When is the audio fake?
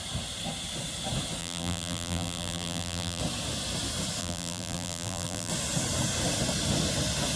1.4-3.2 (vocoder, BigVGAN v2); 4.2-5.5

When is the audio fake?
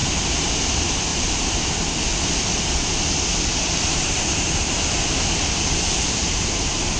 1.1-1.6 (vocoder, BigVGAN v2); 3.5-6.5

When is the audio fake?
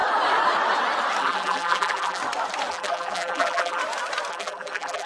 1.2-2.2 (vocoder, BigVGAN v2); 2.7-3.8; 4.3-5.1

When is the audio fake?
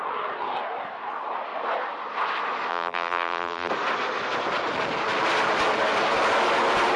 2.7-3.7 (vocoder, BigVGAN v2)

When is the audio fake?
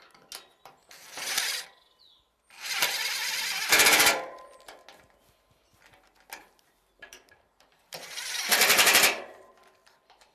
6.4-9.5 (vocoder, BigVGAN v2)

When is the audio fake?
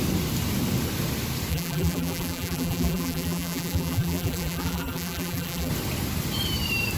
1.5-5.7 (vocoder, BigVGAN v2)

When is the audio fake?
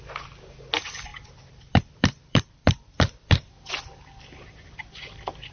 1.1-3.7 (vocoder, BigVGAN v2)